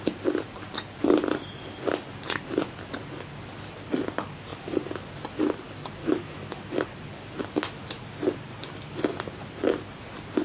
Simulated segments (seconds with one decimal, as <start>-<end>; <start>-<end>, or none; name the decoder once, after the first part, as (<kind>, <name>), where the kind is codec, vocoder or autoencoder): 6.0-6.7 (autoencoder, DAC-VAE)